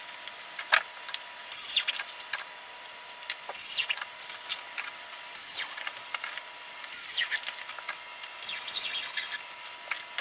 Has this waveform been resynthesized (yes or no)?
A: no